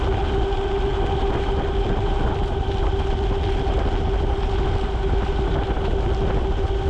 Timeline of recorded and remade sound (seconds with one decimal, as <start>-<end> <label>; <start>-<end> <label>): 0.0-6.9 recorded